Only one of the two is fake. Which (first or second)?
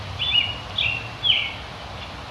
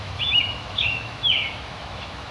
second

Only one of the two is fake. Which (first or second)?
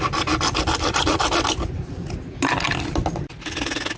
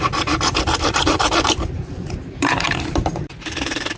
second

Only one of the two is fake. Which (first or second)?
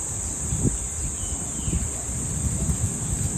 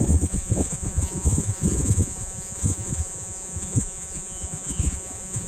second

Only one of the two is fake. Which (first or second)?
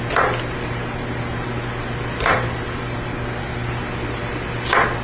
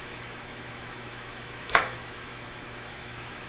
second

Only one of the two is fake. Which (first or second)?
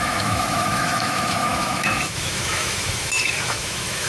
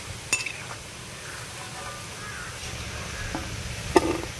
first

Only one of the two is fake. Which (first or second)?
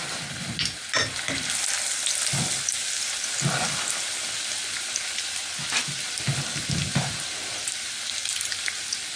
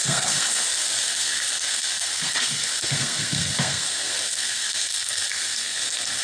second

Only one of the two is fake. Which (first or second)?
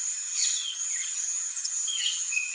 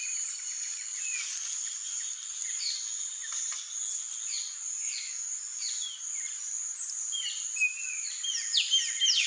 first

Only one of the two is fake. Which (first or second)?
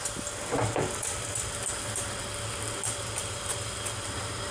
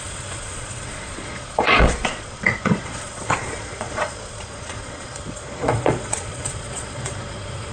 second